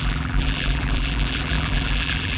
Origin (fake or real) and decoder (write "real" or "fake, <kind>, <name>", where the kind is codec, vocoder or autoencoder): fake, vocoder, BigVGAN v2